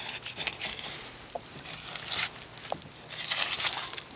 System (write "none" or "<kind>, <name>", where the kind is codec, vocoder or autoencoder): none